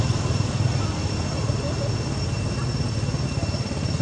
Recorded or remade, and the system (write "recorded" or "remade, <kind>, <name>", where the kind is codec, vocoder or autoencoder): recorded